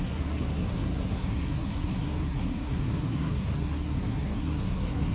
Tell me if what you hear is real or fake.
fake